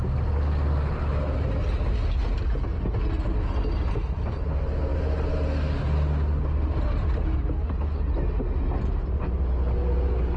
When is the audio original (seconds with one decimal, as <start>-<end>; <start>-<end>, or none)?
0.0-10.4